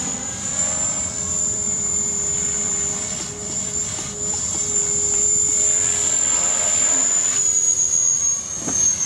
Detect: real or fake fake